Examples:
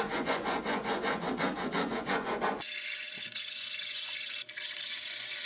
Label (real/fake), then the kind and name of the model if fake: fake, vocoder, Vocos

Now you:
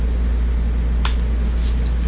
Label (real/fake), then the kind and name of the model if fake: real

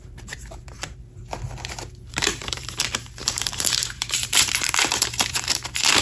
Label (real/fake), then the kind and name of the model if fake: fake, vocoder, BigVGAN v2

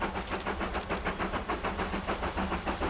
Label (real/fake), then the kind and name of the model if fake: real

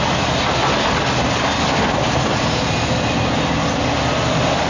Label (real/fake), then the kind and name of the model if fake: real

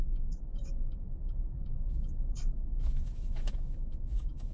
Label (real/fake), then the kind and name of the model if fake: fake, autoencoder, DAC-VAE